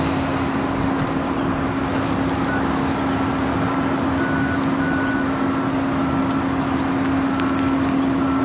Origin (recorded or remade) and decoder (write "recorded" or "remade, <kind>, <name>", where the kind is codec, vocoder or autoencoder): recorded